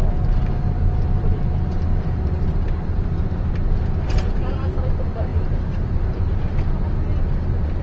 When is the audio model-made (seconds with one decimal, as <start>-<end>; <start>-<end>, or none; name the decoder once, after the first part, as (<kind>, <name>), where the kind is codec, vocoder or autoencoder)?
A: 0.0-1.5 (vocoder, BigVGAN v2); 1.9-3.5; 5.3-6.4